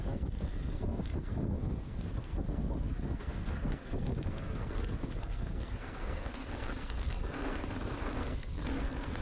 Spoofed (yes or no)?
yes